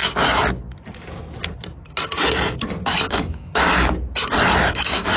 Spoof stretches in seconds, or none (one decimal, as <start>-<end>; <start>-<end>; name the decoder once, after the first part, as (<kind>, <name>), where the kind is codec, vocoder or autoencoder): 3.1-3.6 (autoencoder, DAC-VAE); 4.7-5.2

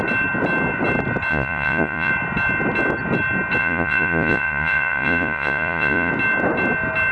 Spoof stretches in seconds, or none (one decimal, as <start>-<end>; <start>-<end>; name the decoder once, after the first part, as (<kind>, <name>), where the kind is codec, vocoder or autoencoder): 1.3-2.1 (vocoder, Vocos); 3.6-6.1

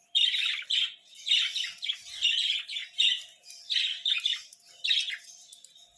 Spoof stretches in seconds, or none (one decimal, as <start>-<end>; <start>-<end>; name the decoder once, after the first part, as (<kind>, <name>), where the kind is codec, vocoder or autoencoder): none

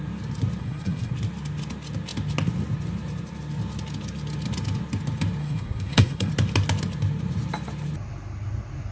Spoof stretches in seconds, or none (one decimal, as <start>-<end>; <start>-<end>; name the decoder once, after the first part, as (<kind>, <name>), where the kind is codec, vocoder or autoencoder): 0.6-1.1 (codec, SNAC); 5.4-6.3

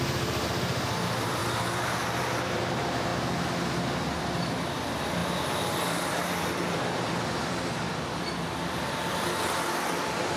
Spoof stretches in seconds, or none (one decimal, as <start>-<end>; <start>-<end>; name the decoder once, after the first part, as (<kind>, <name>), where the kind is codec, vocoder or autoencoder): 0.0-3.1 (vocoder, BigVGAN v2); 3.9-10.4